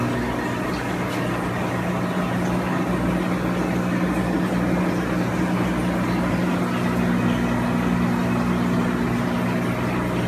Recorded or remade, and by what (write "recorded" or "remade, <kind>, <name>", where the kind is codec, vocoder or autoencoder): recorded